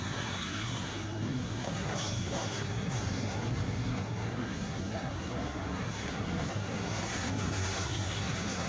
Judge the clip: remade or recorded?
remade